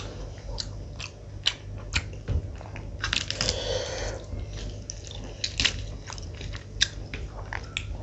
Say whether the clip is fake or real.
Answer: real